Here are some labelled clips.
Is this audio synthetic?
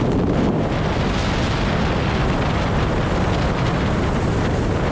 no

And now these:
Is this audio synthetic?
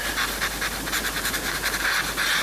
no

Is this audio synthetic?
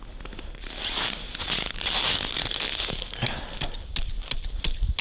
no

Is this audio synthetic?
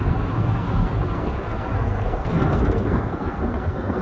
yes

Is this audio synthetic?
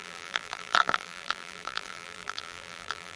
yes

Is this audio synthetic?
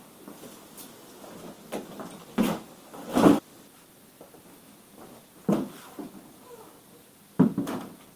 no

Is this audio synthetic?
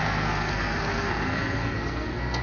yes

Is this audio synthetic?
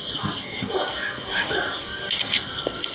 yes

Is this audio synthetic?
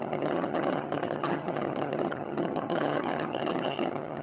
yes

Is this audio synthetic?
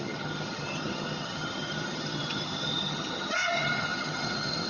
yes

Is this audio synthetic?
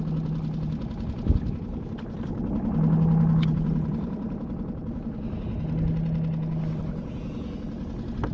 no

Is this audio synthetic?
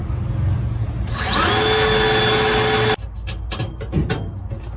no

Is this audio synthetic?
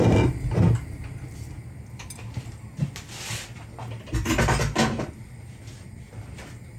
no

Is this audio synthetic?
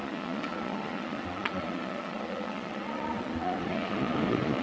yes